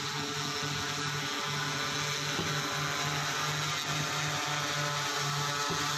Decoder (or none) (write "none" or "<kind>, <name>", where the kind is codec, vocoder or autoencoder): none